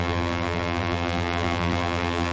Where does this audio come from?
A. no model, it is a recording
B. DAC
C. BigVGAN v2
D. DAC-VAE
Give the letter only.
C